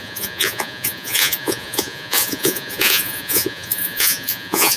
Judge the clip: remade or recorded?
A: remade